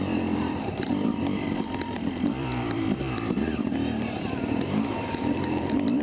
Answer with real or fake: fake